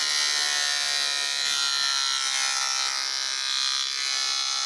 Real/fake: real